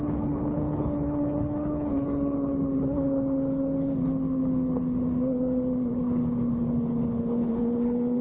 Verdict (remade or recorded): remade